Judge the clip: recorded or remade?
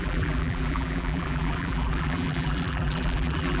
remade